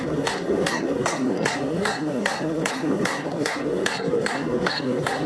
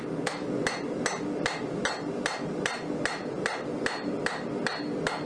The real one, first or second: second